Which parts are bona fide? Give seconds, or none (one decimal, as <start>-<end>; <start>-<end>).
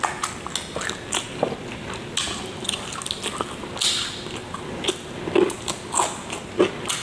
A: 0.0-7.0